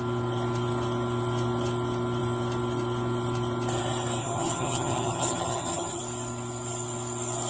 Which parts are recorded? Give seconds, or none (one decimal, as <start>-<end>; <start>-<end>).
0.0-4.2; 6.0-7.5